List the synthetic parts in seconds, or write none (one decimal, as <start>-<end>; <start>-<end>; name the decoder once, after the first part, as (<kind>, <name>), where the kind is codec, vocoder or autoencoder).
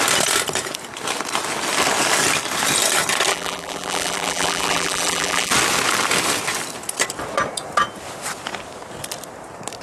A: 3.3-5.5 (vocoder, BigVGAN v2)